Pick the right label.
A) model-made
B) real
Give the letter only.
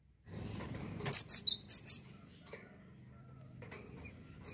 B